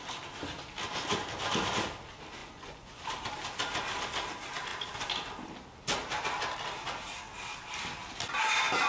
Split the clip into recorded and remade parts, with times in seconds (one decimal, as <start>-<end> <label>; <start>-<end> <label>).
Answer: 0.0-2.4 recorded; 2.4-3.0 remade; 3.0-8.9 recorded